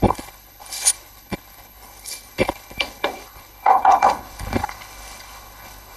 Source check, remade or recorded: remade